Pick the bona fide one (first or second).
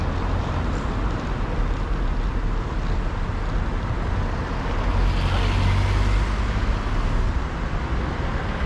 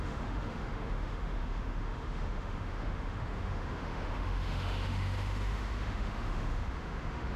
first